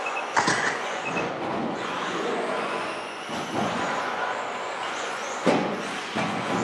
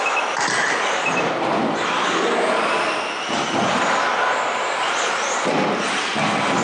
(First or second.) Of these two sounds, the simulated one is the first